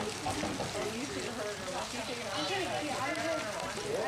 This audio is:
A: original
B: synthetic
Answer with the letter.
A